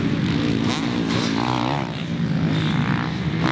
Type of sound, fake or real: real